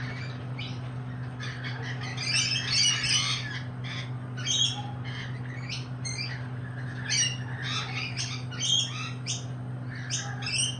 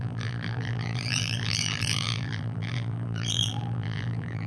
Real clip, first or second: first